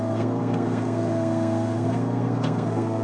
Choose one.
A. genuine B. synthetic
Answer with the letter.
B